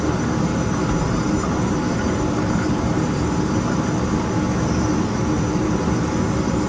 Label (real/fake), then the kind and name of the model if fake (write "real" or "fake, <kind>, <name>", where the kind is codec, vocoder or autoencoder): real